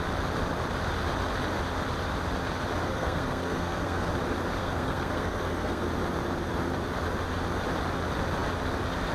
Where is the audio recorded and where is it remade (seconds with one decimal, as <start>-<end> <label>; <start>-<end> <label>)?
0.0-2.8 recorded; 2.8-4.1 remade; 4.1-4.6 recorded; 4.6-5.9 remade; 5.9-9.1 recorded